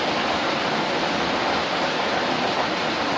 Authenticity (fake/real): real